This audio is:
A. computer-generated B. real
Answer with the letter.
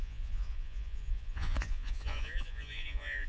A